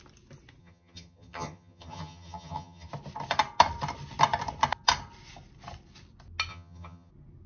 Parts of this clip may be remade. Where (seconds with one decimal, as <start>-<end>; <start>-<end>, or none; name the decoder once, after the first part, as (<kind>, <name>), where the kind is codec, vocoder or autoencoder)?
0.6-2.9 (vocoder, HiFi-GAN); 6.5-7.1